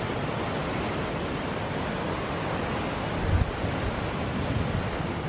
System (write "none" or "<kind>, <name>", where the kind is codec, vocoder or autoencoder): none